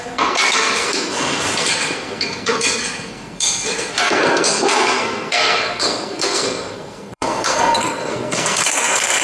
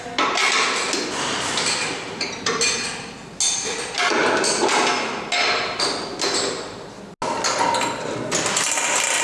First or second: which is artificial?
first